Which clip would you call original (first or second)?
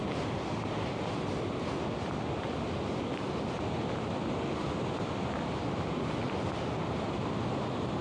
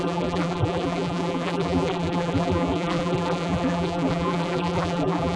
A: first